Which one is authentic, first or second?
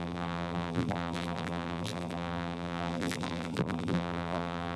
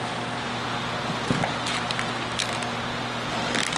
second